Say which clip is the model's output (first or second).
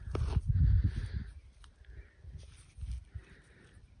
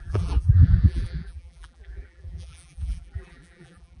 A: second